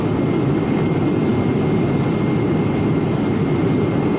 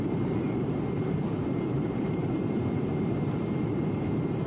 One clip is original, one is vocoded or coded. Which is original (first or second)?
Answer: first